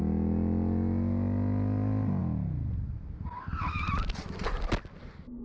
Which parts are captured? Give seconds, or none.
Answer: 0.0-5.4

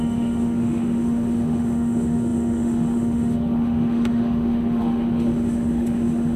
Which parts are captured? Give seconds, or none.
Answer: none